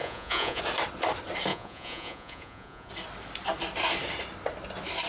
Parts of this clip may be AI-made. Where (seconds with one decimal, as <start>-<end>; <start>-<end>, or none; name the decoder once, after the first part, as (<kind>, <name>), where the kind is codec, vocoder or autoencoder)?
0.0-0.6 (vocoder, Vocos); 1.5-2.9

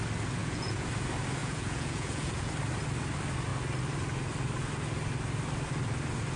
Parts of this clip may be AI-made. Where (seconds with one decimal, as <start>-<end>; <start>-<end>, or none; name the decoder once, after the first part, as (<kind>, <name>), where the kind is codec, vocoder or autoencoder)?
0.4-0.9 (vocoder, Vocos); 1.4-2.5

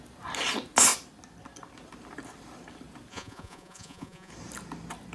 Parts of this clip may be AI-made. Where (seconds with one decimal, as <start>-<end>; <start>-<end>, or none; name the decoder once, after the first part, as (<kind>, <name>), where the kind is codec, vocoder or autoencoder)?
3.1-4.3 (vocoder, Vocos)

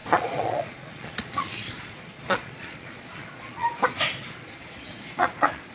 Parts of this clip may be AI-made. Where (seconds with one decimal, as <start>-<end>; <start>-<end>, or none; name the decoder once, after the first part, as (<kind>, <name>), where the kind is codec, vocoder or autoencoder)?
0.0-3.8 (vocoder, Vocos); 4.3-5.7

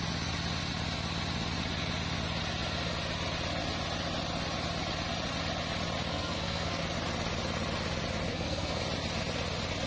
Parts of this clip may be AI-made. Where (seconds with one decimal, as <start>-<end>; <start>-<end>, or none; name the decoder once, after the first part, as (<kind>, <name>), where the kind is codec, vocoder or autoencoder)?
6.1-6.8 (codec, SNAC); 8.3-8.8

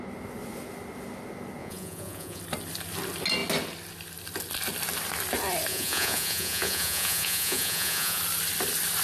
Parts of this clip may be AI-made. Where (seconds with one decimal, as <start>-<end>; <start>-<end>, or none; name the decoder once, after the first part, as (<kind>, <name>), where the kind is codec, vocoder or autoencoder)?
1.6-2.4 (vocoder, Vocos); 5.7-8.2